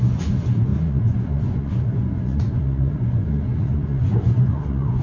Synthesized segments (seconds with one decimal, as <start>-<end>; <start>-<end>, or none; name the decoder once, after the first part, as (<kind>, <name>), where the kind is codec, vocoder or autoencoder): 0.0-5.0 (vocoder, Vocos)